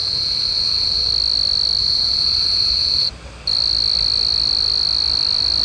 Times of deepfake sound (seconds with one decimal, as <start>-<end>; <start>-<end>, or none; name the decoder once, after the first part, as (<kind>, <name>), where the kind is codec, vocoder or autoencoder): 0.0-1.1 (vocoder, Vocos); 1.8-3.1